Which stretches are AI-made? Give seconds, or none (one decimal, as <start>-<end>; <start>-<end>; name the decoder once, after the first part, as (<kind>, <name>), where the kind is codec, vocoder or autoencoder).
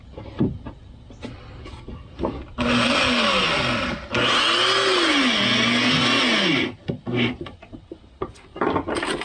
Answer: none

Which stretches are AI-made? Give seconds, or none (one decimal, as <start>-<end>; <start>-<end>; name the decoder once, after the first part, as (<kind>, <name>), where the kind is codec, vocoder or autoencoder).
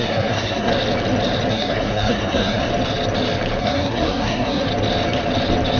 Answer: 0.0-0.7 (codec, SNAC); 1.5-2.7; 3.6-4.7